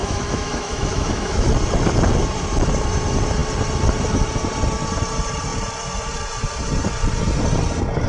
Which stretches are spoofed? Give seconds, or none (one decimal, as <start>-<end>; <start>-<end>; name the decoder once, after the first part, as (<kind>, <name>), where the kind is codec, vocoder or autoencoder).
0.0-1.5 (autoencoder, DAC-VAE)

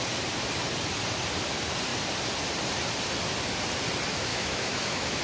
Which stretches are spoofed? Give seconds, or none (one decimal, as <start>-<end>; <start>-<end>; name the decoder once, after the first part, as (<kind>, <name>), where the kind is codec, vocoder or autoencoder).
4.3-5.2 (autoencoder, DAC-VAE)

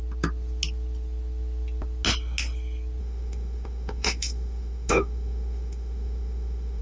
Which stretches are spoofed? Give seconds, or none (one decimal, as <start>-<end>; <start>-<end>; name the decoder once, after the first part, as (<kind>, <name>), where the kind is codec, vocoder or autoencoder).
3.0-6.8 (autoencoder, DAC-VAE)

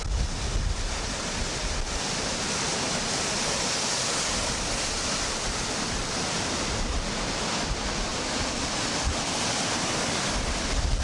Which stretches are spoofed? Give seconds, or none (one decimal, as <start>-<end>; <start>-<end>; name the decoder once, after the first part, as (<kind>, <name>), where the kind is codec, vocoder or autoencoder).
none

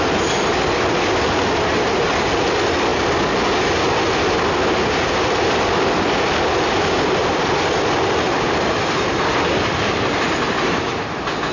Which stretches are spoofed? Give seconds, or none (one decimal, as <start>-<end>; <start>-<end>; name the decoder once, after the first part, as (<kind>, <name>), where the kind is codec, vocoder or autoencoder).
none

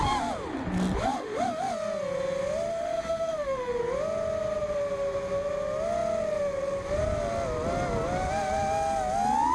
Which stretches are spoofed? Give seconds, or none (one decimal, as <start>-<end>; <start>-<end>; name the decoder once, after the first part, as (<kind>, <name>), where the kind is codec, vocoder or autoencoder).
1.1-1.7 (autoencoder, DAC-VAE); 2.7-3.8